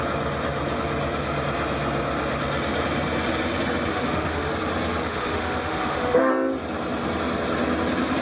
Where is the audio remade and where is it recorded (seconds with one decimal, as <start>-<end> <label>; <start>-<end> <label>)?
0.0-3.9 recorded; 3.9-4.5 remade; 4.5-5.0 recorded; 5.0-6.3 remade; 6.3-8.2 recorded